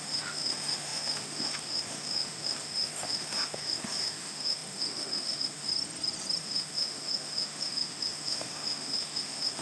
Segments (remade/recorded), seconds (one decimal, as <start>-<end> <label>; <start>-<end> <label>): 0.0-5.7 remade; 5.7-6.4 recorded; 6.4-9.6 remade